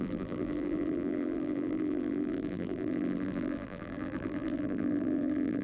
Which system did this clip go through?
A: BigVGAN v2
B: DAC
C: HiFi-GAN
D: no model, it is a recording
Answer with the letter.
A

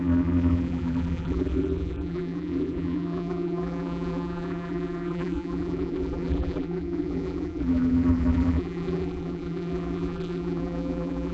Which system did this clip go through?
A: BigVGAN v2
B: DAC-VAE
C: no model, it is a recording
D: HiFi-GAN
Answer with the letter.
A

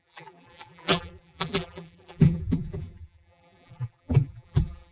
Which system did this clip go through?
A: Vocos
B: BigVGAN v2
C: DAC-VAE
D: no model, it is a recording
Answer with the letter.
B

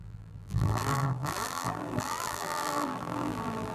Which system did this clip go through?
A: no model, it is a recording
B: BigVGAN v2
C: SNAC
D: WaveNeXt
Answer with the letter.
B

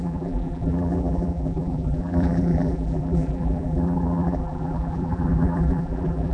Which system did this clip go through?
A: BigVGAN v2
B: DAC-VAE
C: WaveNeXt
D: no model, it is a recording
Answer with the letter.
A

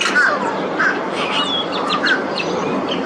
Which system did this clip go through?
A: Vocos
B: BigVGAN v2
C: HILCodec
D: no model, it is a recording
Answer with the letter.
D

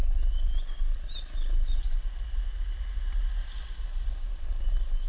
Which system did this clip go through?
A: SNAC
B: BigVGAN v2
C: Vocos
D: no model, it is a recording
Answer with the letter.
D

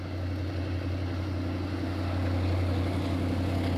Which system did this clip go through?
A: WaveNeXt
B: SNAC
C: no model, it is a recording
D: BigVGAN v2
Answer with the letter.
C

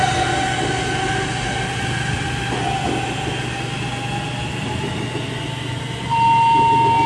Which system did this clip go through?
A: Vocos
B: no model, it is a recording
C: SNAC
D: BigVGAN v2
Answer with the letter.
B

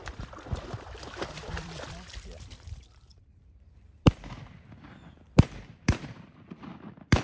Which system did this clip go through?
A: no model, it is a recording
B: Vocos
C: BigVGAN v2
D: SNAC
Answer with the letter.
C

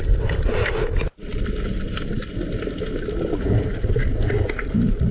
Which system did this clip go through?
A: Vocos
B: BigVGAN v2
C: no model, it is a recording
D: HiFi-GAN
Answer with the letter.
C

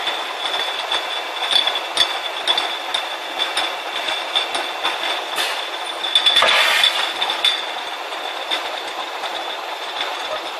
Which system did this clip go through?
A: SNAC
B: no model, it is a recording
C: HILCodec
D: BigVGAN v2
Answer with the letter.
B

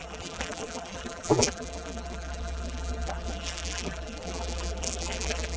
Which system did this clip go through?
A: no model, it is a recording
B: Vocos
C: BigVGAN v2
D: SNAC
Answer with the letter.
C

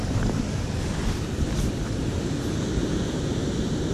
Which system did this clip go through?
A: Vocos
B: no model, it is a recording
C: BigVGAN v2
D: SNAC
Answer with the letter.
B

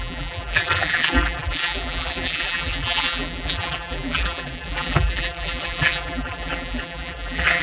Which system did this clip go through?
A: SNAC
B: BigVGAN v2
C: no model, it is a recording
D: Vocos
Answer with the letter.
B